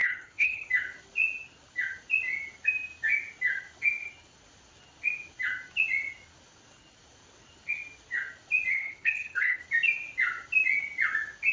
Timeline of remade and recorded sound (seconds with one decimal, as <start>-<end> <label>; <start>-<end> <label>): 0.0-0.7 remade; 0.7-8.7 recorded; 8.7-9.6 remade; 9.6-11.5 recorded

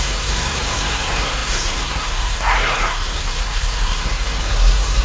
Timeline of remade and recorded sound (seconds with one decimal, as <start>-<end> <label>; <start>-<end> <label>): 0.0-5.0 remade